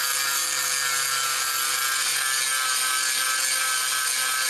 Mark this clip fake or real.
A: real